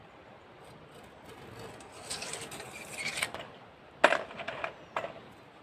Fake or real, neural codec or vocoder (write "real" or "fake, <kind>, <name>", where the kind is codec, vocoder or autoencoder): real